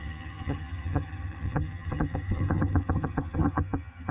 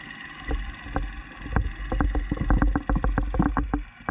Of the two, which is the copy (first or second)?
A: first